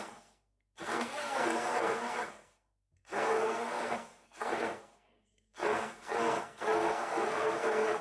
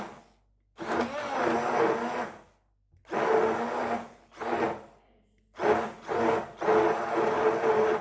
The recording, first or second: second